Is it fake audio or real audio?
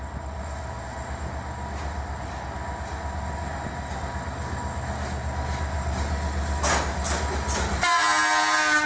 real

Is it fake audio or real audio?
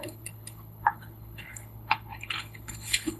fake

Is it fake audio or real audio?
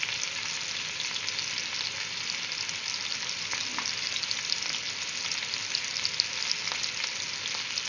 real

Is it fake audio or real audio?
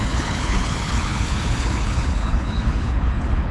fake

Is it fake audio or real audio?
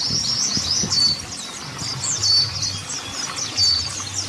real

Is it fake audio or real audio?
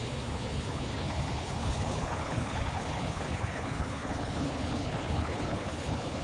fake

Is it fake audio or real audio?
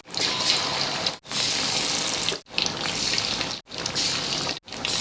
real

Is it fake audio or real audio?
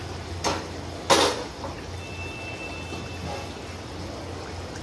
real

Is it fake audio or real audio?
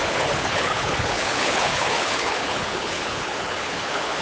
fake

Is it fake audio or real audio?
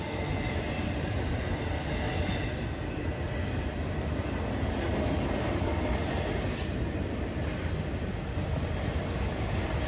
real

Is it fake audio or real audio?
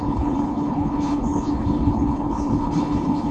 fake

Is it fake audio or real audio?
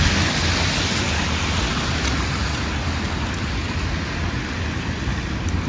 real